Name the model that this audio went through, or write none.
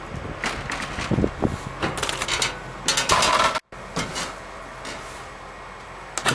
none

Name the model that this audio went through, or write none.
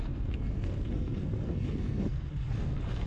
codec, SNAC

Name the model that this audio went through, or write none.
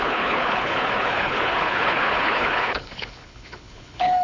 codec, HILCodec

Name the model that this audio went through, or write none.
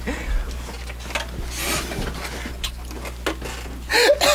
none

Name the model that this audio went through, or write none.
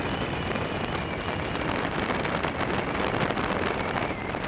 none